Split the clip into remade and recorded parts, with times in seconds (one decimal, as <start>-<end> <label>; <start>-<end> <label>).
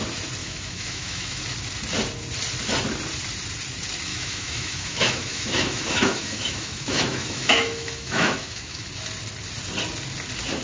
0.0-0.4 recorded; 0.4-1.4 remade; 1.4-4.1 recorded; 4.1-8.9 remade; 8.9-10.6 recorded